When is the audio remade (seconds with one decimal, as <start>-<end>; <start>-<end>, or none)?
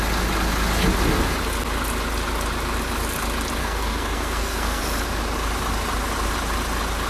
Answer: 3.6-4.8